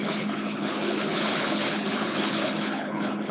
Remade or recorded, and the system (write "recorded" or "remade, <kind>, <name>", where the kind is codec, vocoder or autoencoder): remade, codec, HILCodec